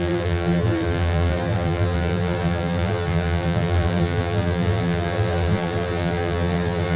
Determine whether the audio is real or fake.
fake